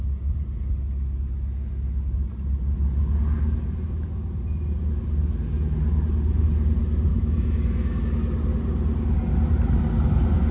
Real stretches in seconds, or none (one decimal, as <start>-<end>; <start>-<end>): 0.0-7.1; 8.0-10.5